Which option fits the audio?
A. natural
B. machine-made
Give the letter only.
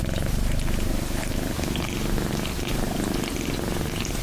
A